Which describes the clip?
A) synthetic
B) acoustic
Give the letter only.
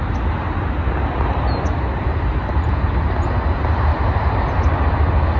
B